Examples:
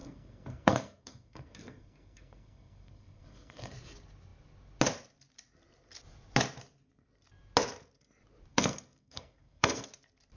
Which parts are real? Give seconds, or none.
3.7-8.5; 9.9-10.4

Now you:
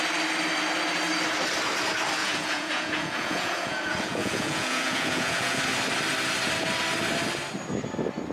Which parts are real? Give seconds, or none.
0.0-2.2; 5.6-8.3

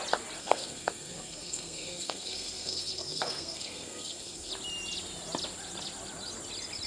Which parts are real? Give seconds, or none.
0.0-0.4; 4.5-6.9

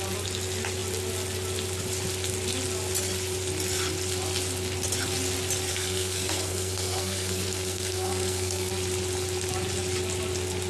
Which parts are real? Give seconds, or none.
0.0-5.7; 8.7-10.7